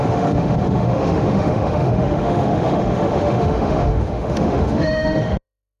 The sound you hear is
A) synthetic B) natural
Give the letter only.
A